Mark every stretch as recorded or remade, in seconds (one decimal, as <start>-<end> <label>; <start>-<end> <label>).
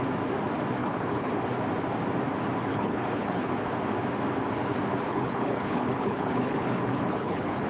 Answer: 0.0-0.8 recorded; 0.8-1.3 remade; 1.3-2.7 recorded; 2.7-3.5 remade; 3.5-5.1 recorded; 5.1-7.7 remade